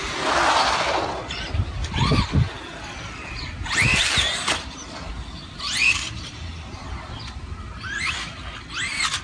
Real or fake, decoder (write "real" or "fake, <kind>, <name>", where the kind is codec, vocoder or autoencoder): real